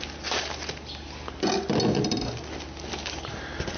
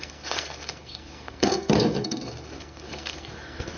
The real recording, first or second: first